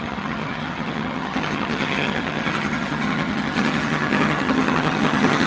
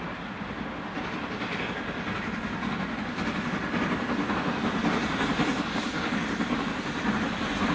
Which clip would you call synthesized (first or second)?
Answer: first